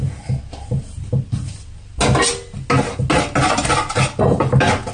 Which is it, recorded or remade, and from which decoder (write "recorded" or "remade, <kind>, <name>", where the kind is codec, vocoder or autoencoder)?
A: recorded